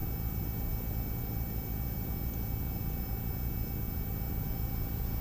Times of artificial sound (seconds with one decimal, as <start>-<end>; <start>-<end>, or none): none